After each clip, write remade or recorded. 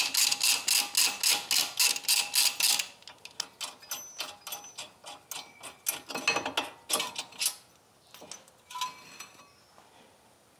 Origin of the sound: recorded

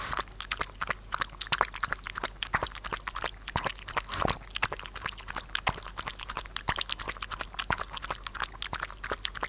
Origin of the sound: recorded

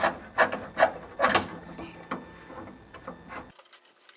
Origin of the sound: recorded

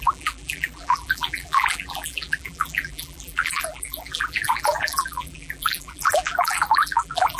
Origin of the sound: remade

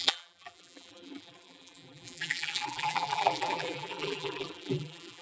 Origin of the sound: remade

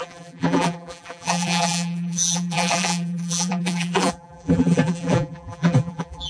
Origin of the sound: remade